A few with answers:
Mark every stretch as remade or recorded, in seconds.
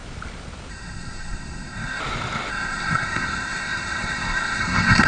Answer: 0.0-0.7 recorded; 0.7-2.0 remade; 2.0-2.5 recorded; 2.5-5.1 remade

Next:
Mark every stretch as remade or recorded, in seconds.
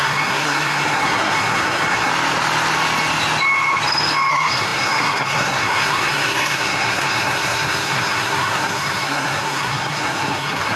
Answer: 0.0-2.1 remade; 2.1-4.3 recorded; 4.3-10.8 remade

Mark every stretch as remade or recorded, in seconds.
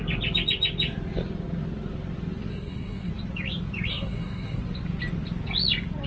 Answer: 0.0-2.5 recorded; 2.5-3.1 remade; 3.1-3.9 recorded; 3.9-4.6 remade; 4.6-6.1 recorded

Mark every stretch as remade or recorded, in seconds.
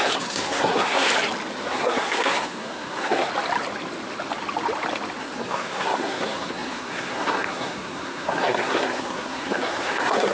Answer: 0.0-1.1 remade; 1.1-1.7 recorded; 1.7-3.3 remade; 3.3-5.2 recorded; 5.2-10.3 remade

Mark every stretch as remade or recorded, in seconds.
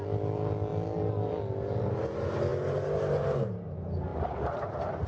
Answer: 0.0-5.1 recorded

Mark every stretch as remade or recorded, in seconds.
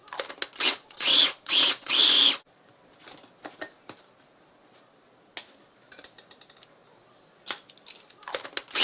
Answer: 0.0-0.7 recorded; 0.7-2.2 remade; 2.2-8.8 recorded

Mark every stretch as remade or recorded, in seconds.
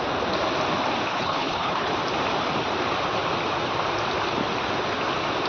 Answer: 0.0-1.1 recorded; 1.1-1.9 remade; 1.9-5.5 recorded